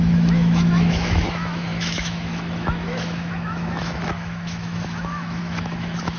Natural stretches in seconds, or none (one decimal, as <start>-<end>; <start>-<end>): none